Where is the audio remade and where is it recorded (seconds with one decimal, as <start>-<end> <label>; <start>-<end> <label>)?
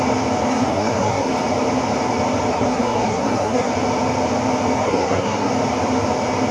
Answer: 0.0-0.5 recorded; 0.5-1.3 remade; 1.3-2.5 recorded; 2.5-3.7 remade; 3.7-4.8 recorded; 4.8-5.5 remade; 5.5-6.5 recorded